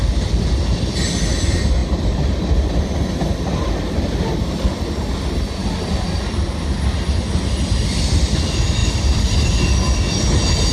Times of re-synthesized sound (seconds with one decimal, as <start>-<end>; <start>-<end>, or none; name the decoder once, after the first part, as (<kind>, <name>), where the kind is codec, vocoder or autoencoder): 1.8-4.4 (vocoder, BigVGAN v2); 5.6-6.2; 8.8-9.6